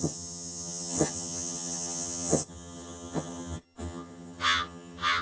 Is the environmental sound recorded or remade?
remade